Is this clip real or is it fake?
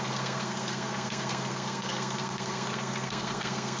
fake